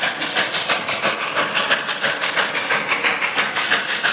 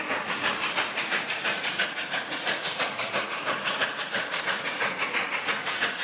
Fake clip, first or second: second